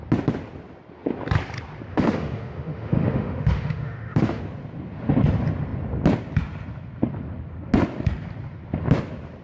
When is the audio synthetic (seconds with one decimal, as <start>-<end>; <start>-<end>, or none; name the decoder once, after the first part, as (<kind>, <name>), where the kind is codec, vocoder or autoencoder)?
1.9-4.4 (autoencoder, DAC-VAE)